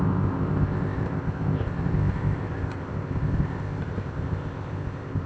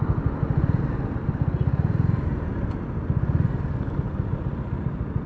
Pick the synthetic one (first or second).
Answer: first